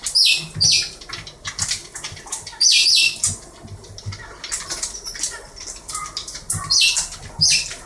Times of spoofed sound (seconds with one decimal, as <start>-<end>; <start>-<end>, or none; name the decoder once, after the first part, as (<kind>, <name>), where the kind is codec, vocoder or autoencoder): none